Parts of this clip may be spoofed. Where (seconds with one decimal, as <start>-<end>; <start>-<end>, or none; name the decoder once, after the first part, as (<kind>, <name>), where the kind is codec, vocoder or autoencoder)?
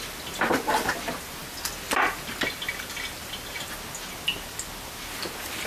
none